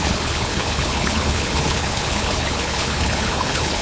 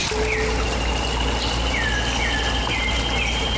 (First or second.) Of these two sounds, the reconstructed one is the first